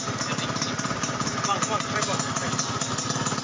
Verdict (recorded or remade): recorded